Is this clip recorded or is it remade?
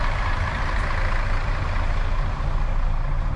recorded